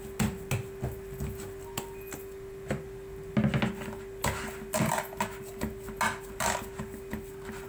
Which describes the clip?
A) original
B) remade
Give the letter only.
A